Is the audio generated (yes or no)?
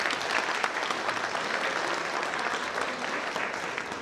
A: no